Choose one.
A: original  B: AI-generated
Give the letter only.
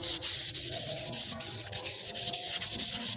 B